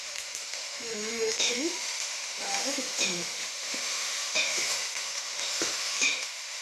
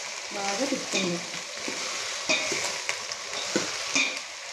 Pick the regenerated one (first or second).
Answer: first